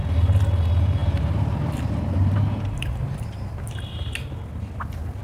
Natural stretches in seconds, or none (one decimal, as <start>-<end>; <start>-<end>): 0.0-1.0; 4.1-5.2